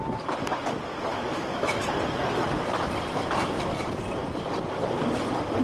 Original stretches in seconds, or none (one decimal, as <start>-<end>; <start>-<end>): 0.0-1.1; 1.8-5.6